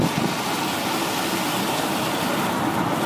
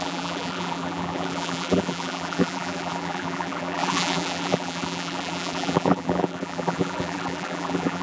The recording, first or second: first